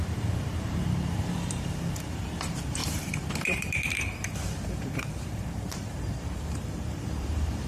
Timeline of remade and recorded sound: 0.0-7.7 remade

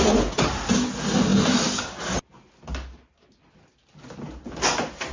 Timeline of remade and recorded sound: 0.0-5.1 recorded

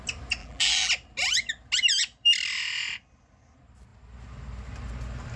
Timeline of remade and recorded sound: 0.0-0.4 recorded; 0.4-0.9 remade; 0.9-5.4 recorded

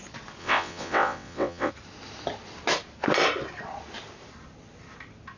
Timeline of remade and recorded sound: 0.0-0.4 recorded; 0.4-1.7 remade; 1.7-5.4 recorded

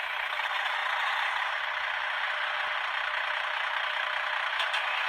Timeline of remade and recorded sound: 0.0-5.1 recorded

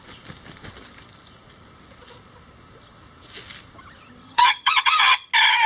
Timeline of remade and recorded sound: 0.0-4.2 recorded; 4.2-5.3 remade; 5.3-5.7 recorded